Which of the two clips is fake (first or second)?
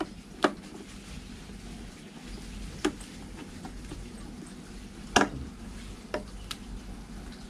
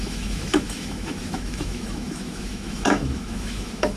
second